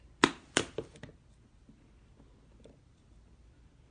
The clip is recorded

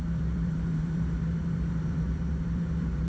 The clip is remade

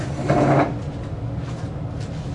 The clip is recorded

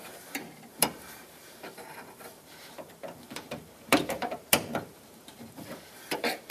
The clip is remade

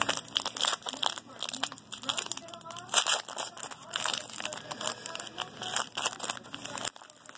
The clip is recorded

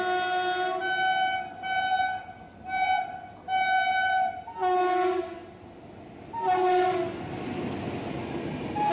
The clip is recorded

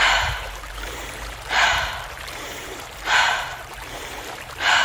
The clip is remade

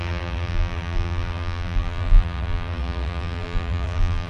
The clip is remade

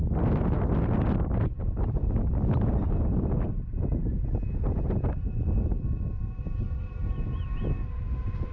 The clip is recorded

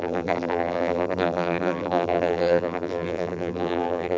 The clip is remade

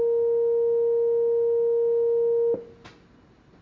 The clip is recorded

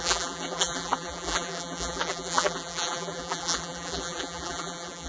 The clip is remade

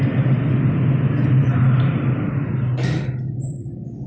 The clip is remade